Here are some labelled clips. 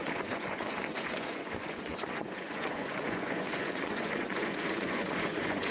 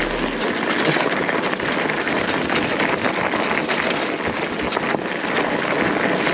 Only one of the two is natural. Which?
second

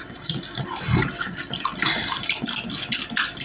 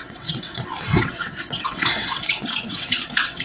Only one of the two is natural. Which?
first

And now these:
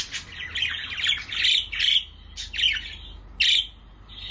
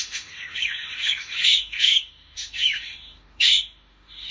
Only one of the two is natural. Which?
first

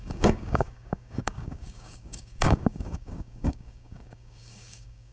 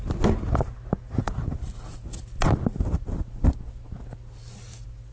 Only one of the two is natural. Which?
second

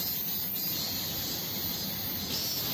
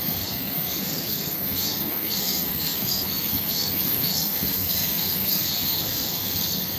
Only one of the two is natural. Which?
first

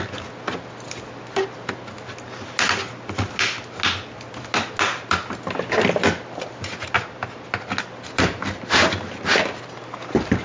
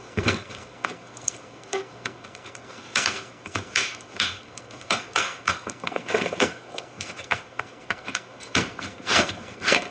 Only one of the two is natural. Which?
first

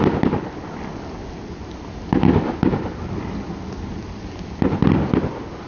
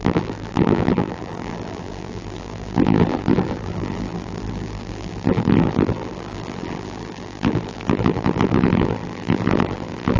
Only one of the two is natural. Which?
first